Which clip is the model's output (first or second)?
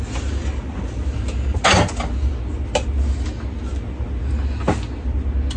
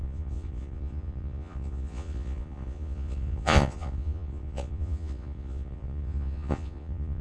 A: second